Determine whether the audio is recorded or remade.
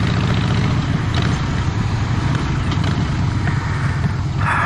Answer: recorded